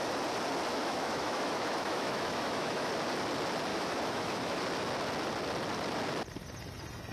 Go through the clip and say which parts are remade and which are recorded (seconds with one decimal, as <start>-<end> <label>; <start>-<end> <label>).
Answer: 0.0-0.7 recorded; 0.7-2.9 remade; 2.9-3.7 recorded; 3.7-4.6 remade; 4.6-7.1 recorded